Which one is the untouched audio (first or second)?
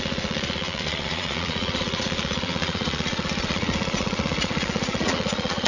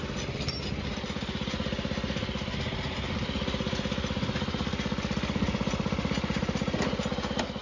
second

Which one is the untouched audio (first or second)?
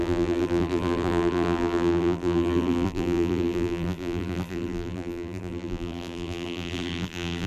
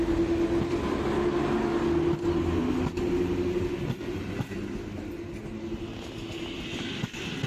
second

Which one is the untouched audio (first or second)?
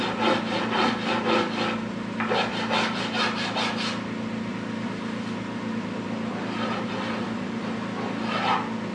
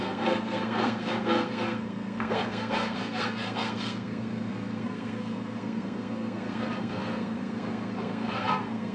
first